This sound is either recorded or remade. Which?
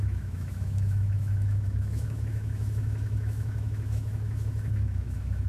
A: remade